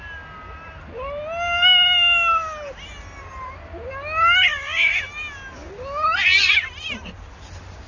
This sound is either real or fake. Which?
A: real